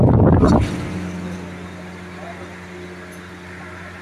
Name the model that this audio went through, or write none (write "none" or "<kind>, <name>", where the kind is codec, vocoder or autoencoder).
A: none